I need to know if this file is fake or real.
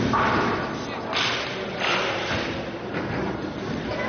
real